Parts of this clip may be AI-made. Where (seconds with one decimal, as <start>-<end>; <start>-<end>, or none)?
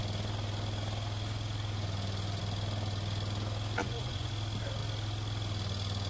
3.8-4.3